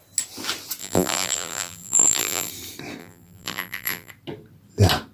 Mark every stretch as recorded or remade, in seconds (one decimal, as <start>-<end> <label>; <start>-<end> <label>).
0.0-0.8 recorded; 0.8-2.5 remade; 2.5-3.0 recorded; 3.0-4.1 remade; 4.1-5.1 recorded